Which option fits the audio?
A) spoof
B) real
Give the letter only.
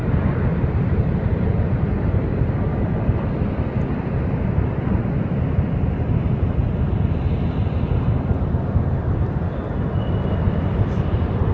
B